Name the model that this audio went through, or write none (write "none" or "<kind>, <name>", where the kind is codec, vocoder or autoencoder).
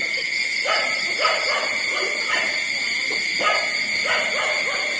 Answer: none